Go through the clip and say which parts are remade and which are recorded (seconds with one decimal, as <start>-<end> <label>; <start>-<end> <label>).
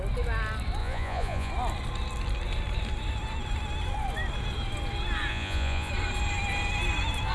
0.0-0.8 recorded; 0.8-1.5 remade; 1.5-5.3 recorded; 5.3-5.9 remade; 5.9-7.3 recorded